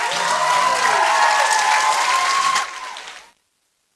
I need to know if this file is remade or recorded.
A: recorded